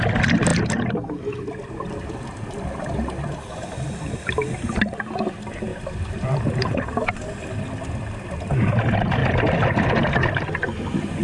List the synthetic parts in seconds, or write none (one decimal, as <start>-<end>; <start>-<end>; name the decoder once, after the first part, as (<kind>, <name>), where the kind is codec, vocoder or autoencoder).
5.7-7.2 (vocoder, BigVGAN v2)